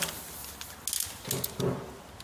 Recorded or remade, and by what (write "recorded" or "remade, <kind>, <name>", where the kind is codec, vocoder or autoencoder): recorded